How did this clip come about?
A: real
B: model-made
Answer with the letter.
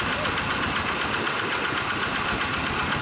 A